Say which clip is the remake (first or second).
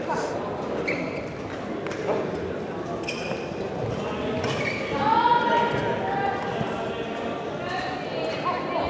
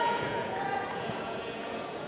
second